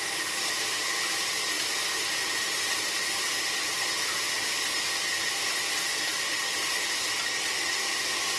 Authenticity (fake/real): real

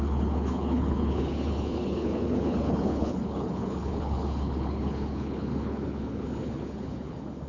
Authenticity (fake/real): fake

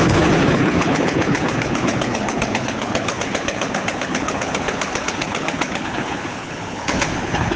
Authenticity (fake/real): fake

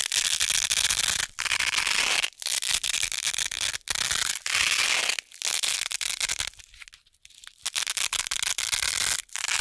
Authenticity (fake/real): real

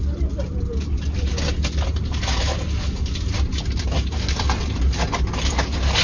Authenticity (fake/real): real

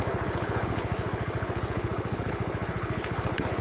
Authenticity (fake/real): fake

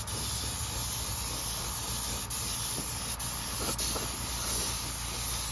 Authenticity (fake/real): real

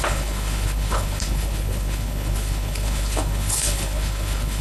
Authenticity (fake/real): fake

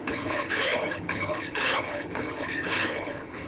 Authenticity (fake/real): fake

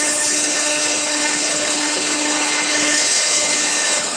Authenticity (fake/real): fake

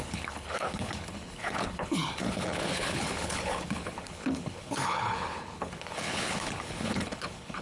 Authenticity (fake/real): fake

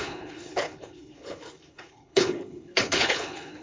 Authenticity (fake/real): fake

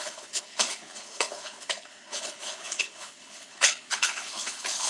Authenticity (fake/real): fake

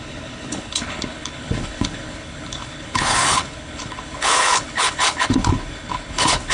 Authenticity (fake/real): fake